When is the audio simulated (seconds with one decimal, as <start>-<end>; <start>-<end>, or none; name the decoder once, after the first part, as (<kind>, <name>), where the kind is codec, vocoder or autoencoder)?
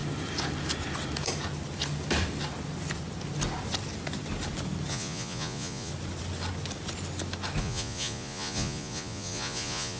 4.9-5.9 (vocoder, Vocos); 7.6-10.0